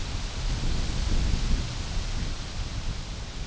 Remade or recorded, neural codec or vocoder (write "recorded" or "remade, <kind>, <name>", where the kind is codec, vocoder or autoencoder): recorded